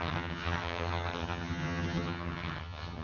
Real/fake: fake